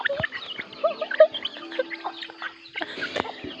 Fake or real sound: real